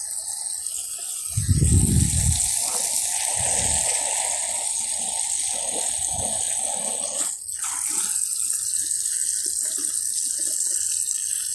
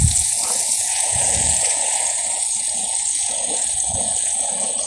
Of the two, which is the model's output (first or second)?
second